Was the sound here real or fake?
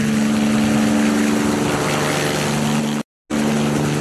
real